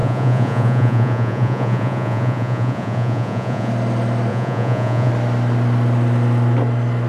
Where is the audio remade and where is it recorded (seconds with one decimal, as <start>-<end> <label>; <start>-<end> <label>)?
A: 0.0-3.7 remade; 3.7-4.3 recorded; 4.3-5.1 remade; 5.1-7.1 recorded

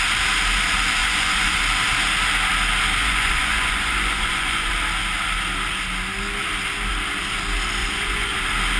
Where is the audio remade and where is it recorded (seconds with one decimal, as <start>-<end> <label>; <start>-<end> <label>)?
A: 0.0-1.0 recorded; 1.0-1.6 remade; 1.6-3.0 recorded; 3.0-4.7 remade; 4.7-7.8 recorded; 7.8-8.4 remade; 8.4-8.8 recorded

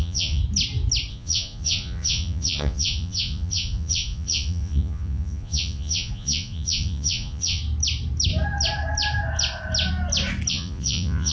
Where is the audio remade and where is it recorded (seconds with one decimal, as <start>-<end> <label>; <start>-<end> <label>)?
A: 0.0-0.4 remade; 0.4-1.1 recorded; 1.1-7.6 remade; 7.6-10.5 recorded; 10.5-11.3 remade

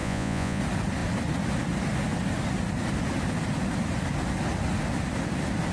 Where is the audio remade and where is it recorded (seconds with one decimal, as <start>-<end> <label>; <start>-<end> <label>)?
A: 0.0-0.6 remade; 0.6-5.7 recorded